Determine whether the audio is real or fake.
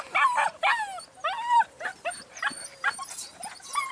real